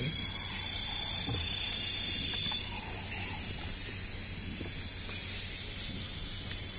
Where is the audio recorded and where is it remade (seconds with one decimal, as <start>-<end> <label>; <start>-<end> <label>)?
0.0-6.8 recorded